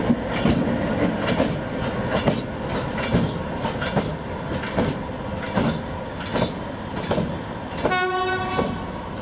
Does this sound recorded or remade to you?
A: recorded